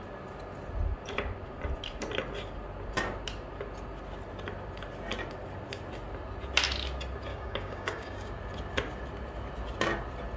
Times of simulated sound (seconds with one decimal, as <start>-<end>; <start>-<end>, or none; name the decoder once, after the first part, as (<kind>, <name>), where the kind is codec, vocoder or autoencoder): 7.3-8.4 (codec, DAC)